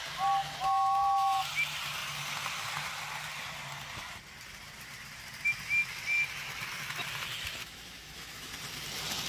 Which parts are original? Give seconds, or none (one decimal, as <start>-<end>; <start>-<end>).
0.0-0.4; 1.4-7.6; 8.5-9.3